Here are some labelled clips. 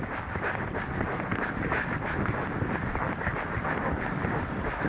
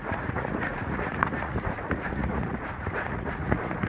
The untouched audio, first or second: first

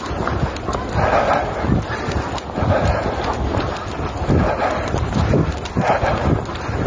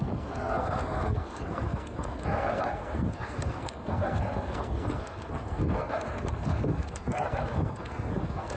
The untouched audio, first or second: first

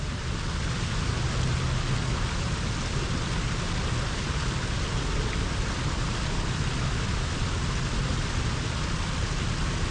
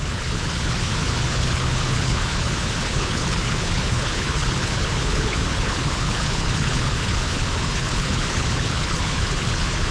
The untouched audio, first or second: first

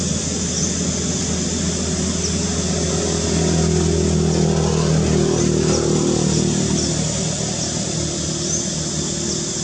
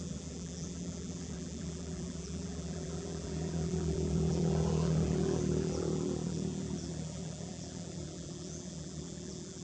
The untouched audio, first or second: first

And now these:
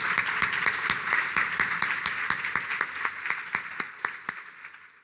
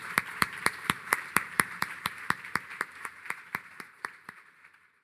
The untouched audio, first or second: first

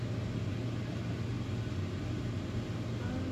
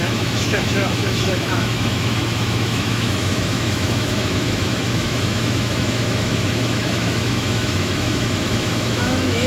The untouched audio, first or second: first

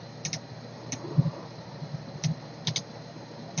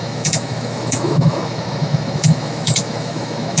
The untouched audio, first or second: first